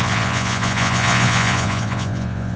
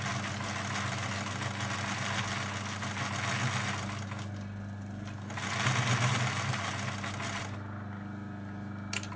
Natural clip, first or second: second